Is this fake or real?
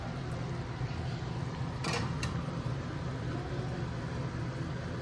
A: real